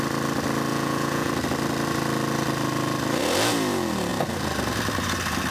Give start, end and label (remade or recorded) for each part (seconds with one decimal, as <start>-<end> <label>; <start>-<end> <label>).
0.0-0.7 recorded; 0.7-1.3 remade; 1.3-5.5 recorded